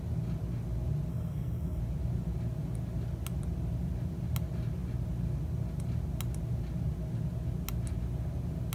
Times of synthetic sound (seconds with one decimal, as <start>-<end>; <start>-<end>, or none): 1.1-1.8